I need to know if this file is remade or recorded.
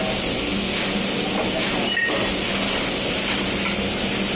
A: recorded